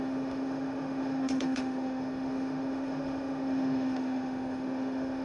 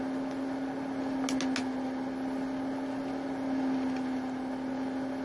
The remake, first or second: first